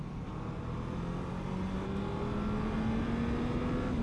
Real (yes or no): yes